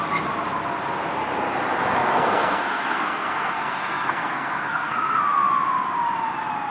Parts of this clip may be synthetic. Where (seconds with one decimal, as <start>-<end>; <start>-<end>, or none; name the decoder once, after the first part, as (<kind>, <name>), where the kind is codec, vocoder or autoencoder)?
2.0-5.2 (codec, SNAC)